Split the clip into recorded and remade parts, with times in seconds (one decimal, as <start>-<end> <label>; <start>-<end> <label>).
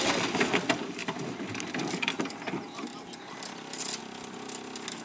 0.0-5.0 recorded